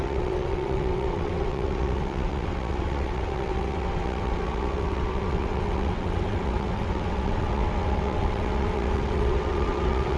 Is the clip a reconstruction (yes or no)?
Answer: yes